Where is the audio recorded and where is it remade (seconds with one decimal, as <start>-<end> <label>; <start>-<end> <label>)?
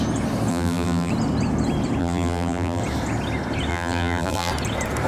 0.0-0.5 recorded; 0.5-1.1 remade; 1.1-2.0 recorded; 2.0-2.8 remade; 2.8-3.7 recorded; 3.7-4.5 remade; 4.5-5.1 recorded